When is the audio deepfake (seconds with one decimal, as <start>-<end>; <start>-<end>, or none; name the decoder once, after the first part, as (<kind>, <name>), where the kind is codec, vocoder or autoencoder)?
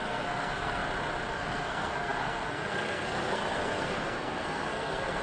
0.0-0.8 (codec, SNAC); 1.3-5.2